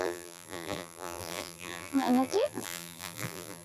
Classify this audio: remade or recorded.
remade